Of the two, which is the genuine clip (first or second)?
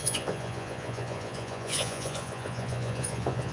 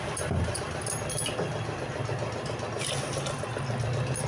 second